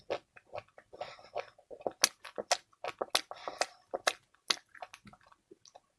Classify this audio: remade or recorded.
recorded